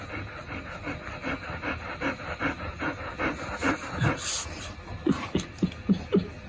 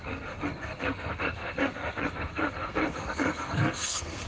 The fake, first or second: second